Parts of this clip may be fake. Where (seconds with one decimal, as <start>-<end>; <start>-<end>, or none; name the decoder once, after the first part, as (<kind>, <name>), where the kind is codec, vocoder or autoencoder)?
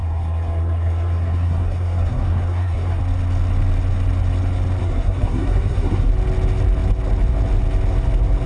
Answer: 0.0-3.0 (codec, SNAC); 4.8-6.1